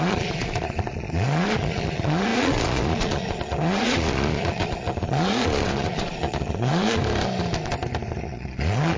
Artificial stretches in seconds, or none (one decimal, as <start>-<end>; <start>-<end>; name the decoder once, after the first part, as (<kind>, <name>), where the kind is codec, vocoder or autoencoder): 0.0-7.0 (vocoder, Vocos); 8.2-9.0